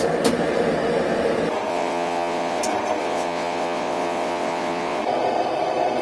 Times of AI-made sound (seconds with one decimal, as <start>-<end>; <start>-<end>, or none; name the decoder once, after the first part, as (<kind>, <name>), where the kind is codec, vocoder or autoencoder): 1.7-2.6 (vocoder, WaveNeXt); 3.0-5.0